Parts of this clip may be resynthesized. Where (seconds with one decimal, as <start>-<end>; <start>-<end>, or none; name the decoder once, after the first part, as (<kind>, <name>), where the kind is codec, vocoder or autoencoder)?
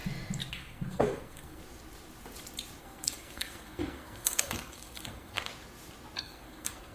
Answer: 0.5-1.6 (codec, SNAC); 2.8-5.5; 6.2-6.9